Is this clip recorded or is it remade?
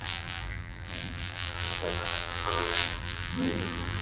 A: remade